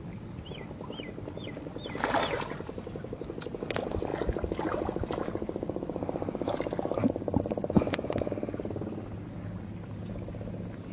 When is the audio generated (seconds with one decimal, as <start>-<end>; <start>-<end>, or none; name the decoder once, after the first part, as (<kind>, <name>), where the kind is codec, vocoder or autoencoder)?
7.6-8.3 (vocoder, Vocos)